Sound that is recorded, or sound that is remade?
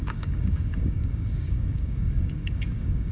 remade